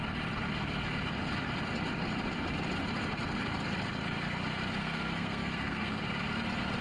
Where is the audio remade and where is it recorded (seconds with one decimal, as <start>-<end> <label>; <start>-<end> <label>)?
0.0-4.8 recorded; 4.8-6.0 remade; 6.0-6.8 recorded